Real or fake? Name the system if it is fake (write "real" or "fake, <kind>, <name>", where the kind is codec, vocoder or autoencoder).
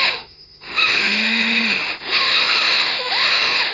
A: fake, autoencoder, DAC-VAE